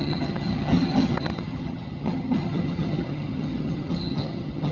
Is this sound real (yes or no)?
no